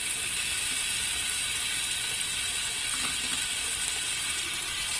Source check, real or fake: real